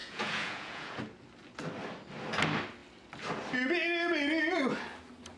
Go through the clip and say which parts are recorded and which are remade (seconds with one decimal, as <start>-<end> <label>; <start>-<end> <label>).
0.0-1.0 remade; 1.0-5.4 recorded